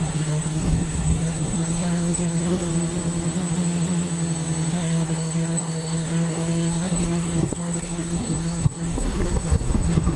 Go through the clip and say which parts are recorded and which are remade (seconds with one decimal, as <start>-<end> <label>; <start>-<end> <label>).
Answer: 0.0-2.7 remade; 2.7-4.7 recorded; 4.7-10.2 remade